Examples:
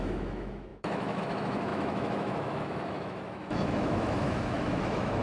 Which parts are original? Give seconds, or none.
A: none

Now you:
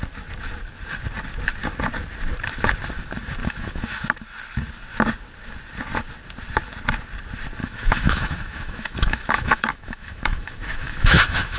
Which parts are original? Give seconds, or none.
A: 0.0-3.4; 4.0-7.6

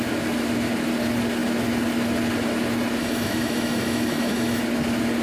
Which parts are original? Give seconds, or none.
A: 0.0-3.0; 4.6-5.2

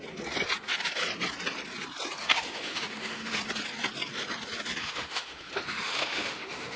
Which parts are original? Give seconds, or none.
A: 0.0-2.3; 3.4-4.8

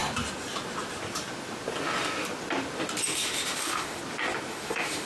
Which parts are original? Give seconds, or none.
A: 0.0-3.1; 4.0-4.5

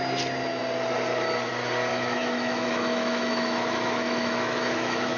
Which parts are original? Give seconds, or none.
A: 0.0-1.9